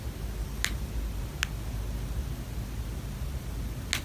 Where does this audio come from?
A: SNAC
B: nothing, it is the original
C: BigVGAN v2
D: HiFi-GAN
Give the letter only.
B